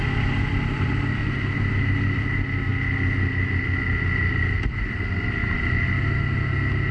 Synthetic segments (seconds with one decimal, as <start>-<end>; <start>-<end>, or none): 0.0-1.2; 1.8-2.7; 4.7-5.4